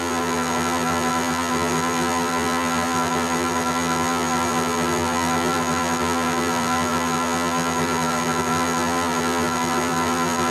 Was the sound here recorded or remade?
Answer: remade